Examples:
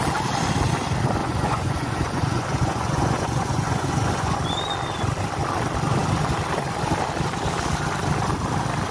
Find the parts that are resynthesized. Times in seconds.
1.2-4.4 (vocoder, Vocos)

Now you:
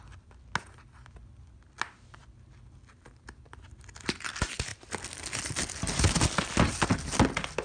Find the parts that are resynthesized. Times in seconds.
none

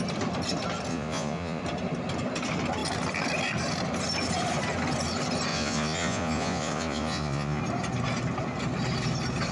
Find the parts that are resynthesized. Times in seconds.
0.9-1.6 (vocoder, Vocos); 5.5-7.6

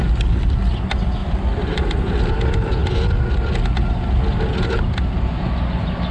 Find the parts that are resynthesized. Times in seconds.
1.2-2.3 (vocoder, BigVGAN v2)

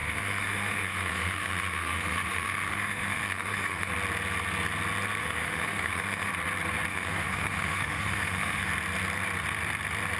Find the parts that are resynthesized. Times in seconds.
0.0-3.9 (autoencoder, DAC-VAE); 5.2-6.3; 6.9-8.7

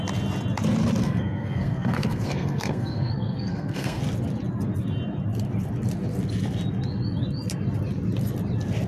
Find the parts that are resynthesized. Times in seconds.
1.0-4.0 (codec, SNAC)